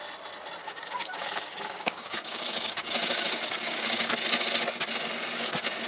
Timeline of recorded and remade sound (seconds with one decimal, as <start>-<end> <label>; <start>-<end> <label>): 0.0-0.6 recorded; 0.6-4.1 remade; 4.1-5.9 recorded